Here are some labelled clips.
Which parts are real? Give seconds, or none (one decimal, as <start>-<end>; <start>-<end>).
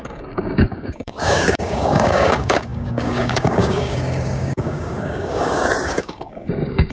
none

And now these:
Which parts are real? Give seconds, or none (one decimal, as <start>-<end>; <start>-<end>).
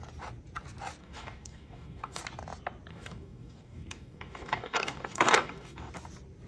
0.0-1.0; 2.2-2.9; 5.9-6.5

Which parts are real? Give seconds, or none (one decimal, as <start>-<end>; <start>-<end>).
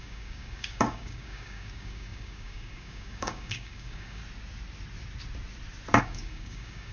4.2-6.0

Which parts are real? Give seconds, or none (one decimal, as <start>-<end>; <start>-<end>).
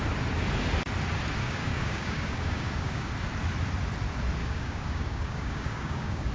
0.0-1.4; 3.1-4.4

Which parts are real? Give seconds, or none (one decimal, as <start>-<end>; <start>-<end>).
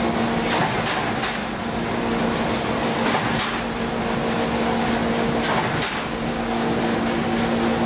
0.0-6.0; 6.8-7.9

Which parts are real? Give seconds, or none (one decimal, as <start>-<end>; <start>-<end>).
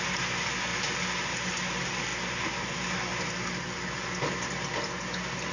0.0-5.5